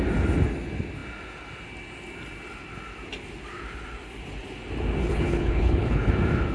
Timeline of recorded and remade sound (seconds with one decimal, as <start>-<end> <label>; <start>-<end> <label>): 0.0-5.0 recorded; 5.0-6.1 remade; 6.1-6.5 recorded